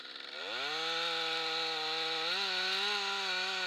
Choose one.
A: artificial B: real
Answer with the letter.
B